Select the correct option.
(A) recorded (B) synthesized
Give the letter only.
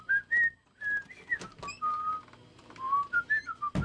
A